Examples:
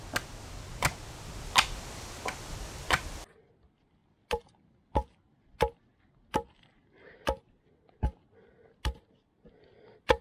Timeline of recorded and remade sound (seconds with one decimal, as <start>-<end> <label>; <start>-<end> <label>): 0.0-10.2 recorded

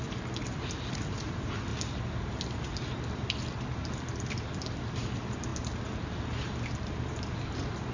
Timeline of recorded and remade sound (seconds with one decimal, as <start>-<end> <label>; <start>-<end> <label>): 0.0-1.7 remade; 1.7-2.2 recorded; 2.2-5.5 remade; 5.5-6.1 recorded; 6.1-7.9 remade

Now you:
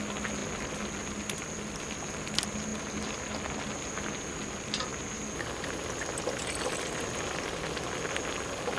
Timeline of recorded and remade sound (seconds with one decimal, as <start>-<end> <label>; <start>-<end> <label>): 0.0-8.8 recorded

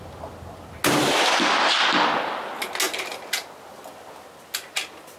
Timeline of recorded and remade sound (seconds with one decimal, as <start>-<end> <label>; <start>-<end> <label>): 0.0-5.2 recorded